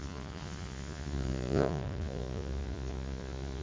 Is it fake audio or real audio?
fake